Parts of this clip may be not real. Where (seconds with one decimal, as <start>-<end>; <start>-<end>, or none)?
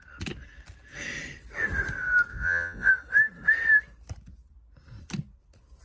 2.3-2.9